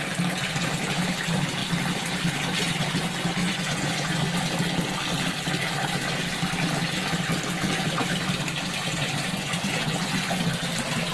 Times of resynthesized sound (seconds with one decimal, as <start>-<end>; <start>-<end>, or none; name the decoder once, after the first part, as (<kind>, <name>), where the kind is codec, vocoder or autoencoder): 3.4-4.2 (vocoder, Vocos); 8.9-10.4